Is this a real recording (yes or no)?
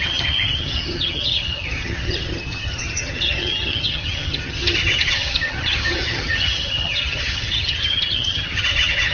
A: no